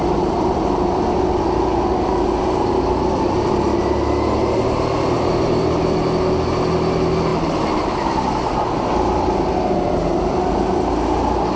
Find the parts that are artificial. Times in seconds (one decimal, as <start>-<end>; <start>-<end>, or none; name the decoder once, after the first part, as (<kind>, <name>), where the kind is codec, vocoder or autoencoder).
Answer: none